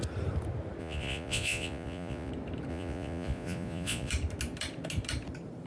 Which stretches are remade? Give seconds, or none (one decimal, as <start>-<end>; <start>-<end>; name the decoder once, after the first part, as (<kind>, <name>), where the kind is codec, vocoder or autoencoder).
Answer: 0.8-2.3 (vocoder, Vocos); 2.7-4.1